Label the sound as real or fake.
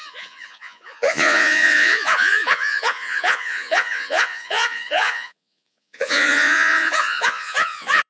fake